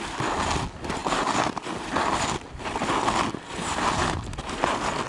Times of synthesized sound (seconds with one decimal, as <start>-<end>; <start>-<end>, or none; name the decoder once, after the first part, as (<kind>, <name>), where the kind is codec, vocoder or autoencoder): none